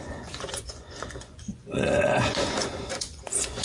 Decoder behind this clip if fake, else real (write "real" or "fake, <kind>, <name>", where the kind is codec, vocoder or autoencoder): fake, vocoder, Vocos